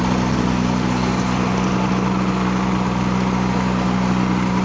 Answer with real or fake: real